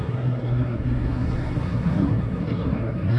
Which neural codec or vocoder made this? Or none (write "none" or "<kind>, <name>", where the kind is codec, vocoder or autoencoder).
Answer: codec, SNAC